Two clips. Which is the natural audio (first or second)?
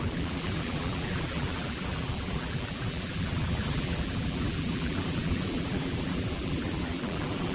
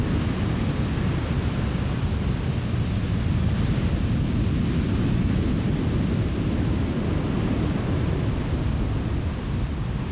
second